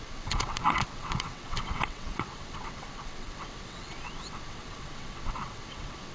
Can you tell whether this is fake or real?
fake